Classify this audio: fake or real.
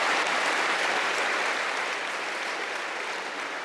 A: fake